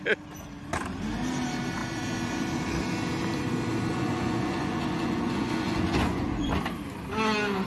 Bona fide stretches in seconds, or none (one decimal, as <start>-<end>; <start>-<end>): 0.0-3.9; 6.5-7.7